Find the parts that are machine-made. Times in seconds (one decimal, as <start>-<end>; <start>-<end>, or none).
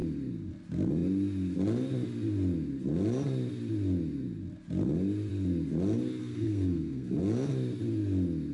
6.2-7.2